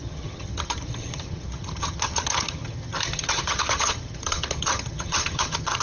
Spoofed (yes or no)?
yes